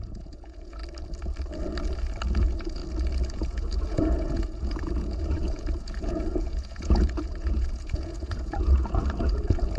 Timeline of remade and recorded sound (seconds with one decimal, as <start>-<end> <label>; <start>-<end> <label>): 0.0-0.8 remade; 0.8-2.4 recorded; 2.4-2.8 remade; 2.8-3.3 recorded; 3.3-9.8 remade